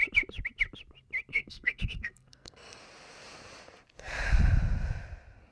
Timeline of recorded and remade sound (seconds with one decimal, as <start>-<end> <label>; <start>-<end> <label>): 0.0-1.3 recorded; 1.3-2.8 remade; 2.8-5.5 recorded